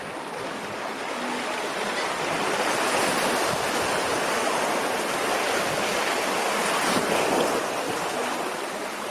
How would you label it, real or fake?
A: real